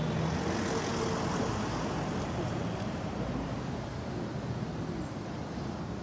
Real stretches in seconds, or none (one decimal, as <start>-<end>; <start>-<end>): 0.0-6.0